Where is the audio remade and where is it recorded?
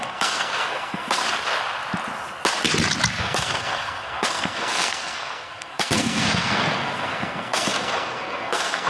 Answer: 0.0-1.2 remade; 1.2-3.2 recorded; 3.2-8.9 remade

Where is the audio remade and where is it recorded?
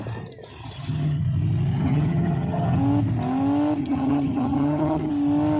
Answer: 0.0-0.6 recorded; 0.6-1.2 remade; 1.2-1.8 recorded; 1.8-2.8 remade; 2.8-3.8 recorded; 3.8-5.1 remade; 5.1-5.6 recorded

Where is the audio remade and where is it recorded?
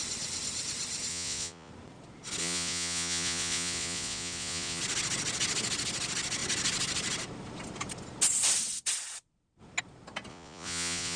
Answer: 0.0-1.1 recorded; 1.1-1.7 remade; 1.7-2.4 recorded; 2.4-4.8 remade; 4.8-10.3 recorded; 10.3-11.2 remade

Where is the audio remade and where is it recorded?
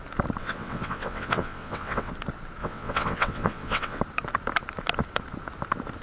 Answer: 0.0-0.4 recorded; 0.4-2.1 remade; 2.1-2.6 recorded; 2.6-4.0 remade; 4.0-6.0 recorded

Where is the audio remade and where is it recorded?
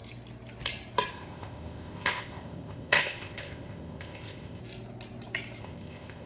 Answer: 0.0-1.1 recorded; 1.1-4.6 remade; 4.6-5.6 recorded; 5.6-6.3 remade